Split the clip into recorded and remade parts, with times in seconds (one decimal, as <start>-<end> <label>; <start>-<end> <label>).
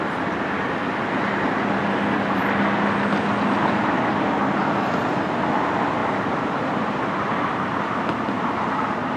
0.0-6.0 recorded; 6.0-7.3 remade; 7.3-9.2 recorded